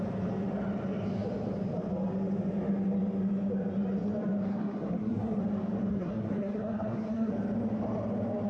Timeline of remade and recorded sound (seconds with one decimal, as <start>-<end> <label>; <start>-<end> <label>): 0.0-4.5 recorded; 4.5-5.4 remade; 5.4-5.9 recorded; 5.9-7.3 remade; 7.3-8.5 recorded